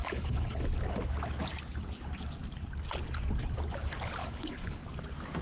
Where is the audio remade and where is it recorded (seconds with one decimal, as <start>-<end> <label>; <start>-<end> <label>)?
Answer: 0.0-0.6 remade; 0.6-4.2 recorded; 4.2-4.8 remade; 4.8-5.4 recorded